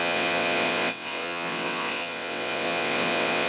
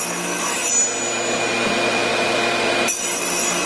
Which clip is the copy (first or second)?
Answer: first